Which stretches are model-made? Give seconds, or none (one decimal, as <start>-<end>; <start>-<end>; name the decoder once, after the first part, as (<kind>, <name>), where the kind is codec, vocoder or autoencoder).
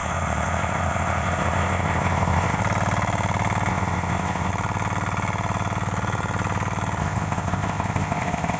0.0-2.6 (codec, ZipCodec); 3.7-4.5; 7.0-8.6